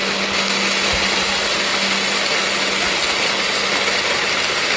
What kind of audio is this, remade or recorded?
recorded